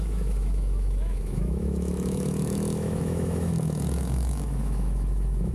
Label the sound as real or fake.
fake